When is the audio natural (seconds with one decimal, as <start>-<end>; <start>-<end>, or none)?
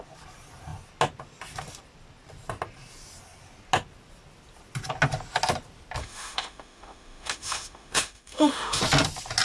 0.0-6.0; 8.8-9.4